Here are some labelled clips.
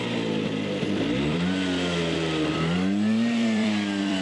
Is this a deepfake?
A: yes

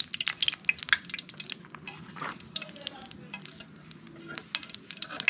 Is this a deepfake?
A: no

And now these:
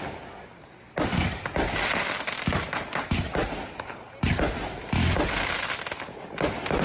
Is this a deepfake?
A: no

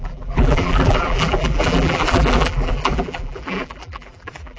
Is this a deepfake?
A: yes